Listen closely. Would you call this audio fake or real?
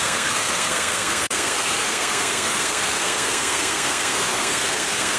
fake